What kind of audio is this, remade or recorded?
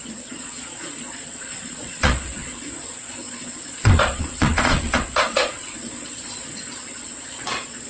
remade